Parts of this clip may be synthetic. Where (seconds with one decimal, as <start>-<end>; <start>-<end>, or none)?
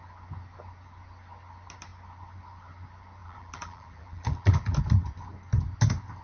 3.2-4.8